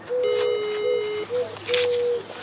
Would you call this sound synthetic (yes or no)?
no